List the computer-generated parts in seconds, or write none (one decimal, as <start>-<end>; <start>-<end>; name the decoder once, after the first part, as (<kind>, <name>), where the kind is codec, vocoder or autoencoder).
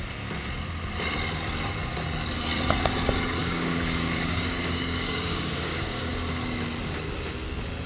3.4-6.1 (codec, DAC)